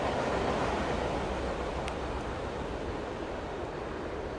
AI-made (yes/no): no